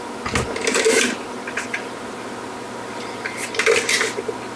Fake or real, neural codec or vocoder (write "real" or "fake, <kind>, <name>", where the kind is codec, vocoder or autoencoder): real